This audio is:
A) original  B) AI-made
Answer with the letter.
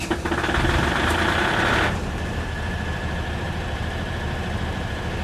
B